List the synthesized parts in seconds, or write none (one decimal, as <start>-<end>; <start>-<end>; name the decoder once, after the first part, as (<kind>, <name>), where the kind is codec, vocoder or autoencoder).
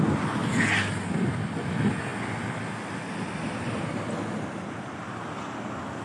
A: none